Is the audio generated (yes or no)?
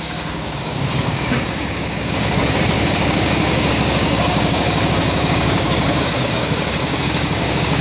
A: yes